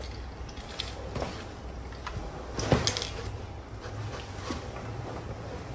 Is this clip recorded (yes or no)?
yes